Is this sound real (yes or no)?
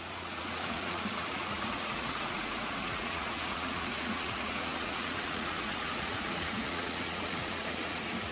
no